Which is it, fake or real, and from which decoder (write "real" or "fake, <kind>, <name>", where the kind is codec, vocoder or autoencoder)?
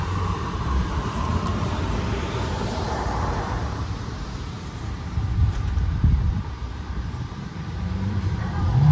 fake, vocoder, BigVGAN v2